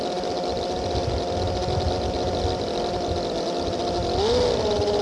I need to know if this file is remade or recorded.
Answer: recorded